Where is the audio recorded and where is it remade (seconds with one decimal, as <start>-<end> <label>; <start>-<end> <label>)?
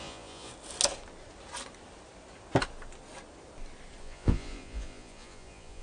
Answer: 0.0-0.5 remade; 0.5-4.0 recorded; 4.0-5.8 remade